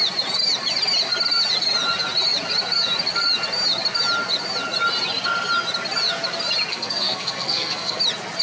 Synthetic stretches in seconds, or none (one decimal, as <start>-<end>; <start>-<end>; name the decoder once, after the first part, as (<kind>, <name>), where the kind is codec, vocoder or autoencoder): 6.7-8.0 (codec, SNAC)